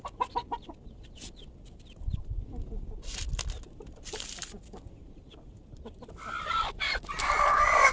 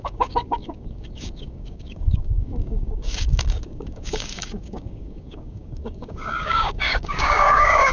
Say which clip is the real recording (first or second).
first